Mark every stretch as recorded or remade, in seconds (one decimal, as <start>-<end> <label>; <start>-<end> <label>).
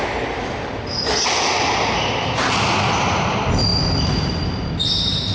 0.0-5.3 recorded